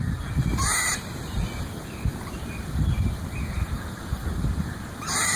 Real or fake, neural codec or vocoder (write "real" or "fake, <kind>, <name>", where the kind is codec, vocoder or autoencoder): real